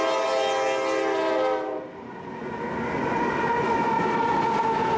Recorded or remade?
recorded